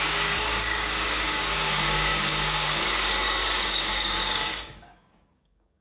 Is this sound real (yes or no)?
no